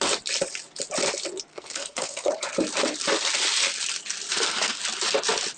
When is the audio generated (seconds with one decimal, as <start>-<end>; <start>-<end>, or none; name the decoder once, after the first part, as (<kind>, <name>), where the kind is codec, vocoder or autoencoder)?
1.5-2.3 (codec, SNAC); 4.3-4.8

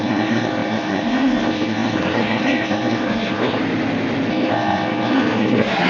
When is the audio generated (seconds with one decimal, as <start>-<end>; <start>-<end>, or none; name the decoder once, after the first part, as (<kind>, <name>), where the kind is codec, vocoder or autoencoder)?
0.0-3.6 (codec, SNAC); 4.3-5.9

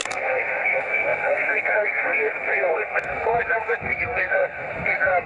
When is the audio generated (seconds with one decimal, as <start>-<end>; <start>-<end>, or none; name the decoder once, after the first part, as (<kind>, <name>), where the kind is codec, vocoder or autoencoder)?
0.0-5.3 (codec, SNAC)

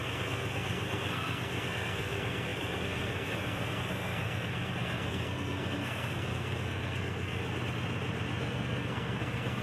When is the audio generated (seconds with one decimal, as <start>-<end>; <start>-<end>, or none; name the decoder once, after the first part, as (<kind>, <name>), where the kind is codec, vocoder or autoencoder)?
0.0-7.4 (codec, SNAC); 8.4-9.6

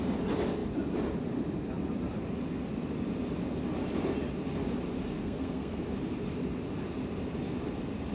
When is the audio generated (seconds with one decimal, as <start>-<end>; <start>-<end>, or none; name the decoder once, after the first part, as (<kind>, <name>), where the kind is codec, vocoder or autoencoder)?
5.2-5.8 (codec, SNAC)

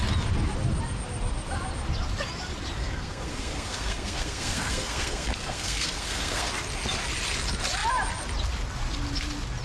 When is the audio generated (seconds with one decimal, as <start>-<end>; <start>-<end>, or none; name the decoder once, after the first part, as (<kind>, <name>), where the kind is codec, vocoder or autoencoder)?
2.8-6.5 (codec, SNAC)